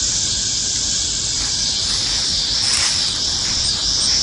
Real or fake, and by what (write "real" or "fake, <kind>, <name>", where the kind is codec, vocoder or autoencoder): real